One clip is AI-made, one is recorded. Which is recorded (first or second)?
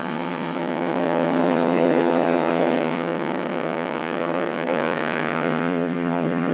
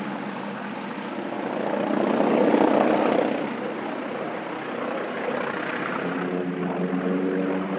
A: second